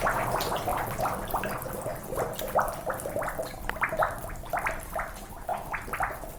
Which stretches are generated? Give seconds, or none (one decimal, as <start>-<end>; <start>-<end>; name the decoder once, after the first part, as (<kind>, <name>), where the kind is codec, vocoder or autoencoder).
0.7-1.4 (vocoder, BigVGAN v2); 1.9-4.6; 5.5-6.4